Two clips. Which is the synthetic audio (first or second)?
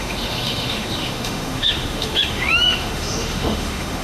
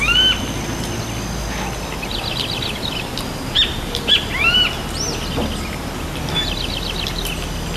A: first